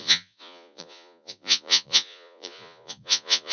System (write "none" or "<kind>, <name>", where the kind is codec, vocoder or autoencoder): vocoder, Vocos